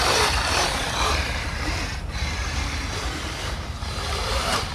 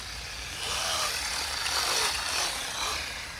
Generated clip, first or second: first